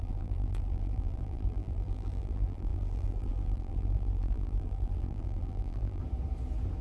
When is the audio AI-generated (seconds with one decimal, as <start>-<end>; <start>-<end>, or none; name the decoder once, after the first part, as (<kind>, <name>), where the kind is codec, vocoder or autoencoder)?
0.0-6.0 (vocoder, BigVGAN v2)